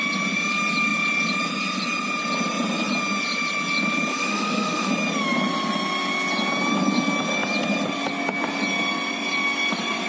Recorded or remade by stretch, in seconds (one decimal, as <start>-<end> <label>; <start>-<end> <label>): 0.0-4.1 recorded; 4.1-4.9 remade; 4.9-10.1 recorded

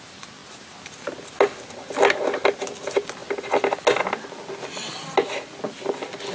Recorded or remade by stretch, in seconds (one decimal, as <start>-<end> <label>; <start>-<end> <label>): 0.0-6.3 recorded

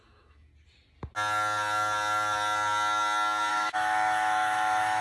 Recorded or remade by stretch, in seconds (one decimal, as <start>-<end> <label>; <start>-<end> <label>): 0.0-0.5 remade; 0.5-3.5 recorded; 3.5-5.0 remade

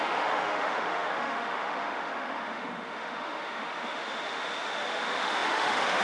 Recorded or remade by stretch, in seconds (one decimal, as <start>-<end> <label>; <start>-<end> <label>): 0.0-6.0 remade

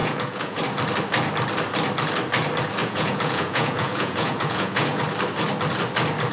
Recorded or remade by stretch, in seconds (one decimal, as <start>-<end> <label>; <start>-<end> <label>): 0.0-0.6 remade; 0.6-2.8 recorded; 2.8-5.0 remade; 5.0-6.3 recorded

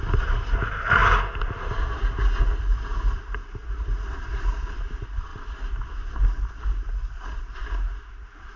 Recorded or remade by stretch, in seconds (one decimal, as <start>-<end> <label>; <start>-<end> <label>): 0.0-1.0 remade; 1.0-2.4 recorded; 2.4-7.6 remade; 7.6-8.1 recorded; 8.1-8.6 remade

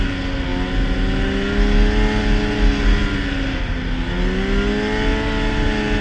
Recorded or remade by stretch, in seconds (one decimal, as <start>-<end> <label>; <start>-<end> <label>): 0.0-6.0 recorded

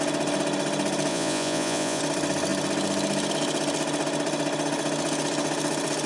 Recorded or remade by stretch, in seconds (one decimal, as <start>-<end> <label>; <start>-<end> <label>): 0.0-1.1 recorded; 1.1-2.0 remade; 2.0-6.1 recorded